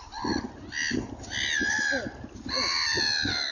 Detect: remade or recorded recorded